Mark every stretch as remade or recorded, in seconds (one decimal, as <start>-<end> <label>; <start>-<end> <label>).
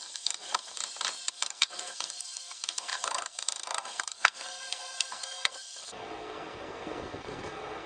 0.0-0.8 remade; 0.8-1.3 recorded; 1.3-7.9 remade